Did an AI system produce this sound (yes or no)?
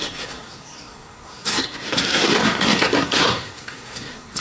yes